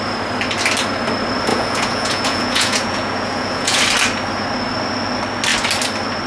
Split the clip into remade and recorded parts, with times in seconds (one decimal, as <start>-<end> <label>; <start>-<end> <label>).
0.0-1.5 recorded; 1.5-3.8 remade; 3.8-6.3 recorded